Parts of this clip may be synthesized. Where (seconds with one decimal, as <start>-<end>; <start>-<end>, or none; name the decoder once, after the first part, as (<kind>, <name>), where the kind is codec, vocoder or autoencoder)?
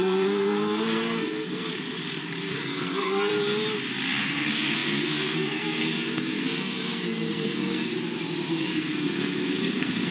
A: 0.0-1.7 (codec, SNAC); 2.4-3.3; 4.2-7.9; 8.5-10.1